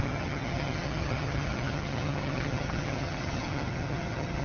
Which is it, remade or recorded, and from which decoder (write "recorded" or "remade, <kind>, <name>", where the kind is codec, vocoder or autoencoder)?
remade, vocoder, HiFi-GAN